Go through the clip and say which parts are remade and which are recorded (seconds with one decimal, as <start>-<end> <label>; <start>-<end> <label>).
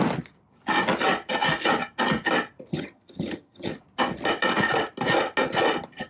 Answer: 0.0-2.7 recorded; 2.7-3.7 remade; 3.7-6.1 recorded